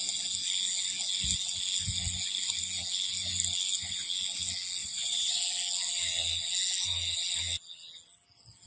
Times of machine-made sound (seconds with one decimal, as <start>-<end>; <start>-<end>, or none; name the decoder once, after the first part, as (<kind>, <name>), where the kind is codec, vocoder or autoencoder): 4.8-5.4 (vocoder, WaveNeXt)